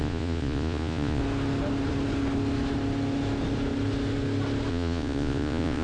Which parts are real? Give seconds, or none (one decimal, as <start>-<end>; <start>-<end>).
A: 1.2-4.7